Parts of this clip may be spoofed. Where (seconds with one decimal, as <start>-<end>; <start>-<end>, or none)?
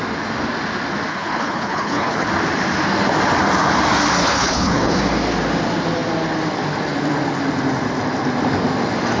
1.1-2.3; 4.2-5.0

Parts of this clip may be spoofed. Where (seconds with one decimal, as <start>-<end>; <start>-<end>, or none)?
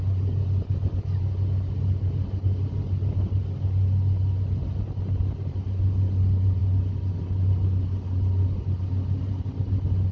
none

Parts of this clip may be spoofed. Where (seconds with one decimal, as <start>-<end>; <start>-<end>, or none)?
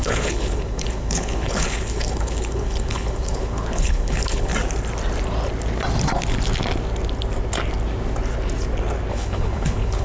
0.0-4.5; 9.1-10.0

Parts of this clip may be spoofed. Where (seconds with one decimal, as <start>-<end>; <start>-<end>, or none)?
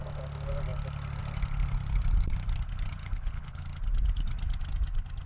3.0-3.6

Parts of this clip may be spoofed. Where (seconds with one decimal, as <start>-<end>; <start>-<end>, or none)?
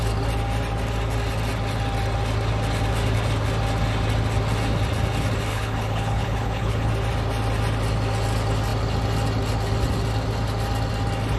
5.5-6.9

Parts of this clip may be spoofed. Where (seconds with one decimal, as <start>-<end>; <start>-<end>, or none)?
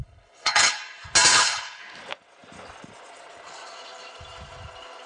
0.0-0.8; 1.3-1.8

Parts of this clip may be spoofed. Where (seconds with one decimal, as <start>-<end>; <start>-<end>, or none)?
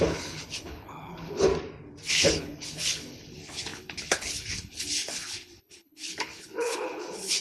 0.0-1.5; 2.1-7.4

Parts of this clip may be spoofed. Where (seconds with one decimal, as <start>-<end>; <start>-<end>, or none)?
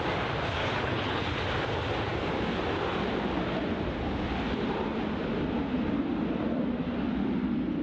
0.6-1.5